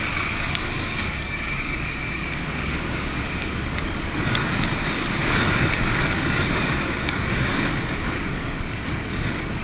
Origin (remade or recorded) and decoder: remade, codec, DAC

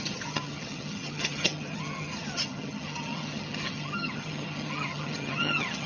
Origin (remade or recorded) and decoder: remade, vocoder, HiFi-GAN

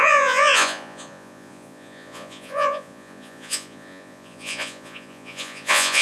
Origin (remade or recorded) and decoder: remade, vocoder, Vocos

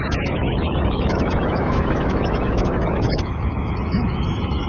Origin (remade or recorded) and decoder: remade, autoencoder, DAC-VAE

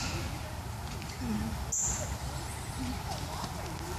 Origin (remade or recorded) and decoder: recorded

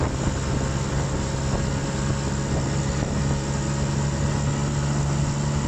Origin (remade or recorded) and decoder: recorded